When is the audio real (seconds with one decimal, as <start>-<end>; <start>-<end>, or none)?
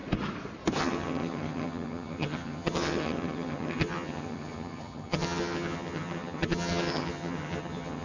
0.0-0.8